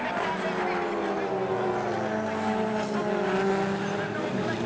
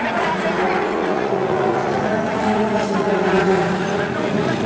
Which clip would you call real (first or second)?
first